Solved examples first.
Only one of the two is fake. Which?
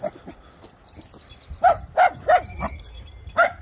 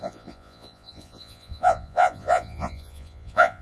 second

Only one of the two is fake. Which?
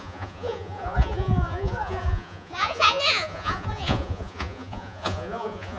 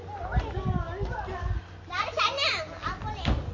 first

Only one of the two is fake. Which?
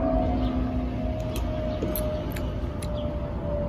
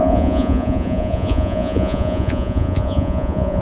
second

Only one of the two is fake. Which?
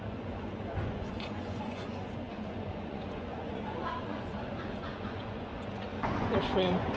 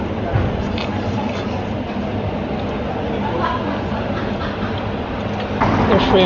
first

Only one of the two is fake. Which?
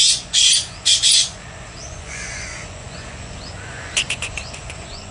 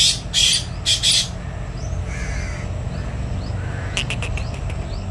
first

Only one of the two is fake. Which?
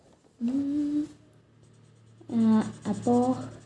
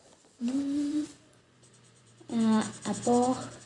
second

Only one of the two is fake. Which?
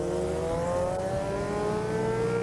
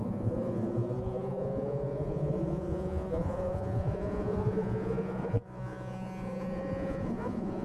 second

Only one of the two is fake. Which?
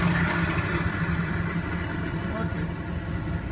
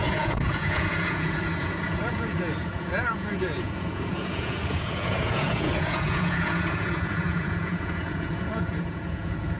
second